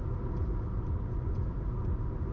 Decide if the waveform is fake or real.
real